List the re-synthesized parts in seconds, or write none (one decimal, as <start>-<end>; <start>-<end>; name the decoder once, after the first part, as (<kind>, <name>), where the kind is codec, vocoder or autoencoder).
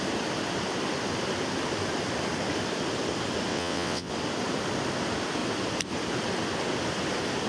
3.5-4.1 (vocoder, WaveNeXt)